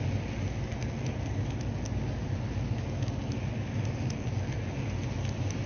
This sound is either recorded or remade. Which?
recorded